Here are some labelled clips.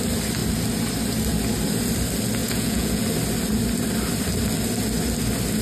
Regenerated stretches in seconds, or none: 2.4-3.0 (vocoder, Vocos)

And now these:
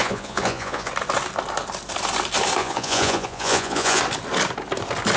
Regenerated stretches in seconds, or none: 0.0-0.9 (vocoder, Vocos); 2.6-4.0

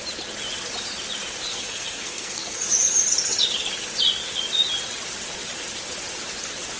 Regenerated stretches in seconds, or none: 1.5-2.6 (codec, SNAC)

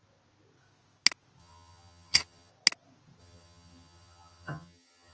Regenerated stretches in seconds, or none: 1.4-2.5 (vocoder, HiFi-GAN); 3.2-5.1

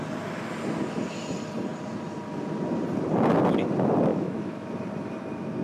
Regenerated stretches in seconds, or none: 4.1-4.7 (autoencoder, DAC-VAE)